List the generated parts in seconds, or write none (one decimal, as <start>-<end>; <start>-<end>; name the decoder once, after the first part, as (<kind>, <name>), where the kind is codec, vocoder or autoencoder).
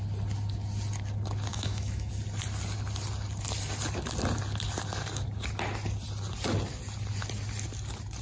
1.5-2.1 (autoencoder, DAC-VAE)